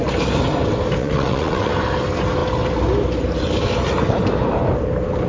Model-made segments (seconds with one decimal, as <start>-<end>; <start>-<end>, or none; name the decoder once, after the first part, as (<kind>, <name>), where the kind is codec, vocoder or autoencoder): 1.0-1.7 (vocoder, WaveNeXt)

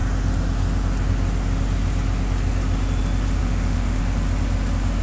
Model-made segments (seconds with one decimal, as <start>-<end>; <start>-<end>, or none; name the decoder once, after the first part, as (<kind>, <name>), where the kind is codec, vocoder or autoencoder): 3.4-4.0 (autoencoder, DAC-VAE)

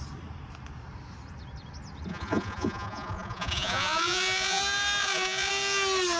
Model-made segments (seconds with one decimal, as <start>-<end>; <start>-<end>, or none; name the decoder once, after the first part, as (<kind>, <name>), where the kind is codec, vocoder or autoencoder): 2.1-4.6 (vocoder, Vocos); 5.0-5.5

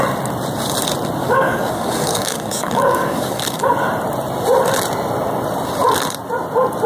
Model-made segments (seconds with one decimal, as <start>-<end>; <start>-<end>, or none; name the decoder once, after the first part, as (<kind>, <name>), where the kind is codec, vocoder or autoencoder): 1.2-3.7 (codec, DAC)

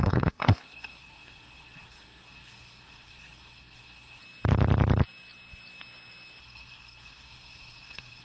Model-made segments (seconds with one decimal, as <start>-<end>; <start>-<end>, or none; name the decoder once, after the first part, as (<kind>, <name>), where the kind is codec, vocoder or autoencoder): 0.0-4.2 (codec, SNAC); 6.4-8.2

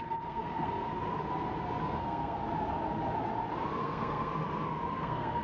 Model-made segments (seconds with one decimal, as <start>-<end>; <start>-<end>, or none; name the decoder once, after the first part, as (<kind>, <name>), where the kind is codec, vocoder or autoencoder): 0.0-0.9 (codec, SNAC); 1.8-2.4; 3.8-4.3; 4.9-5.4